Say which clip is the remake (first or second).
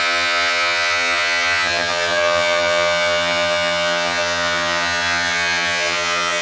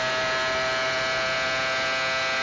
first